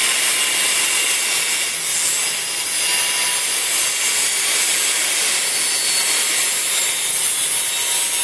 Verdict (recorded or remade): recorded